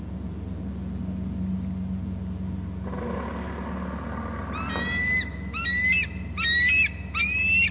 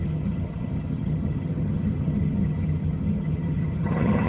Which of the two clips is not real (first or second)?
second